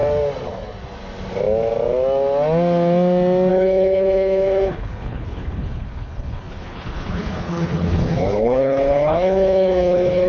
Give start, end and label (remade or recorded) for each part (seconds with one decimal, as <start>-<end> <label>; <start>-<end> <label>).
0.0-3.5 recorded; 3.5-10.3 remade